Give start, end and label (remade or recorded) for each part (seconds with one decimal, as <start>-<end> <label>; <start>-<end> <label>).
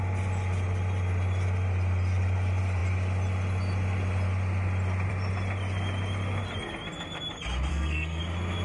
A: 0.0-7.7 recorded; 7.7-8.2 remade; 8.2-8.6 recorded